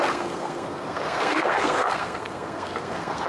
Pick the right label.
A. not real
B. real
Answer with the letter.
A